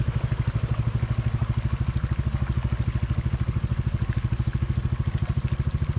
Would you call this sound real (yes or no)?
yes